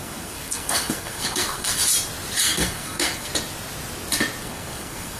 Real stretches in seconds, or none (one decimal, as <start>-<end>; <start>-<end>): 1.8-2.4; 3.3-4.4